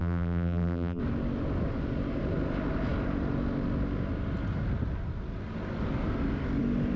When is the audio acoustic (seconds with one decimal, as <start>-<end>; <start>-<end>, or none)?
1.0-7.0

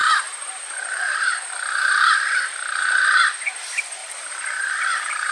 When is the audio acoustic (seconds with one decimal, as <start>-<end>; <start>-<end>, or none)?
2.4-4.0

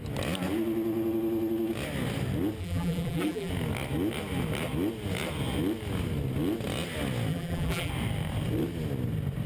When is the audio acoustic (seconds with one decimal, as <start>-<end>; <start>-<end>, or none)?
0.0-2.6; 3.5-7.3; 7.9-9.5

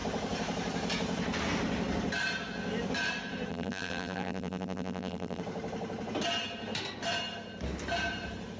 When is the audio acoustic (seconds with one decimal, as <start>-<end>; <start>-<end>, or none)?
0.0-3.5; 5.4-8.6

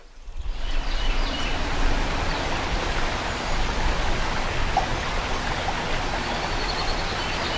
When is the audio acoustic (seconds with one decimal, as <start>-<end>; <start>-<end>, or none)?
2.8-7.6

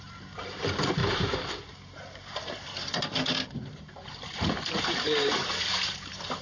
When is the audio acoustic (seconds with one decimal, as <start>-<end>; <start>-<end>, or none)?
none

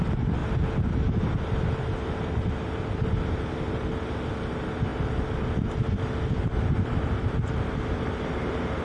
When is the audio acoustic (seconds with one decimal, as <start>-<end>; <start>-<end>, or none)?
0.0-8.8

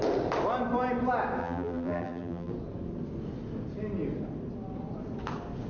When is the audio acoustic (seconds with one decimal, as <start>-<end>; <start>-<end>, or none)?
0.0-1.4; 2.5-5.7